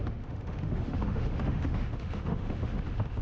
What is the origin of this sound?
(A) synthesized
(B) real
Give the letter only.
A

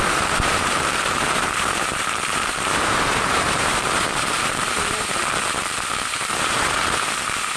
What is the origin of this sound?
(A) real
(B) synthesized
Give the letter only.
B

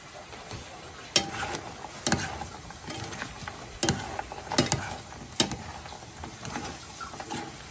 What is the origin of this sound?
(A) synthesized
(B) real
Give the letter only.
B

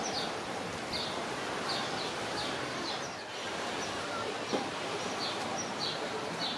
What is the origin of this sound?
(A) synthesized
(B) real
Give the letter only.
A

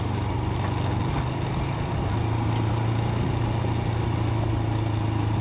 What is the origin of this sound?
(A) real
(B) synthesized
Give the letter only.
A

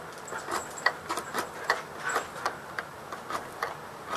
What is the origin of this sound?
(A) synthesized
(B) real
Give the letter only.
B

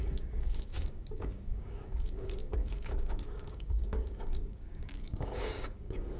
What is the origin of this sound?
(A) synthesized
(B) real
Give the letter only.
A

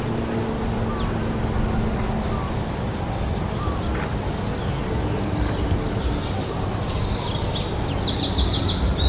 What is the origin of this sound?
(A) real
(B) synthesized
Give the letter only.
A